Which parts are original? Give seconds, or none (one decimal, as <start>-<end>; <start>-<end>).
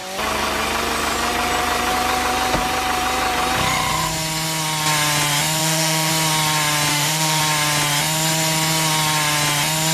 0.0-5.6; 6.1-6.9; 7.4-9.9